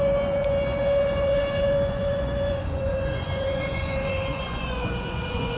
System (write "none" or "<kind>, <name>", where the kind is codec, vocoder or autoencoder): vocoder, Vocos